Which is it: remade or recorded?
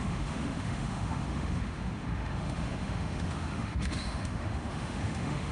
remade